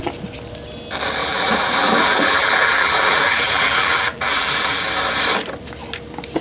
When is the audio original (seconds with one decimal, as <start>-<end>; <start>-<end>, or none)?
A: 0.0-1.2; 5.0-6.4